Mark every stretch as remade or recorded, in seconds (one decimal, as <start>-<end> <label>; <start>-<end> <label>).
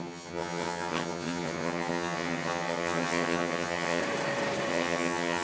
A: 0.0-4.0 remade; 4.0-4.7 recorded; 4.7-5.4 remade